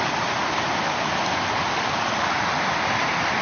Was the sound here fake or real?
real